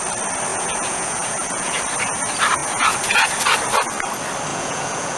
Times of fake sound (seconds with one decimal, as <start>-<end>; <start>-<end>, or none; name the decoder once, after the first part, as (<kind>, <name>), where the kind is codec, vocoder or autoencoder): 0.5-1.8 (vocoder, Vocos); 2.6-3.4; 4.5-5.2